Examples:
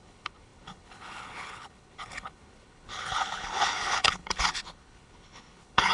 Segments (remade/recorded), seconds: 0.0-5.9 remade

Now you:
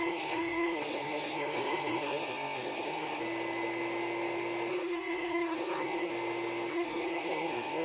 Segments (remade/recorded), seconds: 0.0-3.2 remade; 3.2-4.7 recorded; 4.7-6.1 remade; 6.1-6.7 recorded; 6.7-7.8 remade

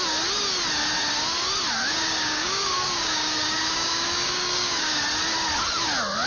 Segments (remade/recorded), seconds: 0.0-1.9 recorded; 1.9-5.0 remade; 5.0-6.3 recorded

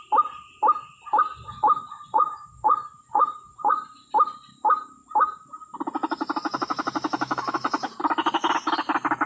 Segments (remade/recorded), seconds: 0.0-1.3 recorded; 1.3-4.1 remade; 4.1-9.3 recorded

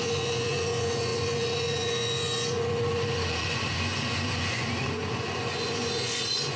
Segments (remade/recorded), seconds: 0.0-6.6 remade

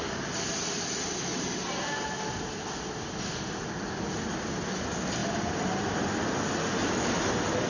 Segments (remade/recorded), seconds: 0.0-7.7 recorded